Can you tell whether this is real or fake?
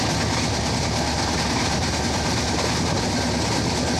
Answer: real